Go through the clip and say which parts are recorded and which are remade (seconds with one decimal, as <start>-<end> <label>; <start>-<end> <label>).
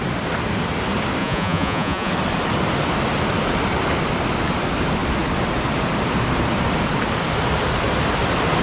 0.0-1.2 recorded; 1.2-2.1 remade; 2.1-8.6 recorded